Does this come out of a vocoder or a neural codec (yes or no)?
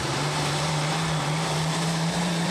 yes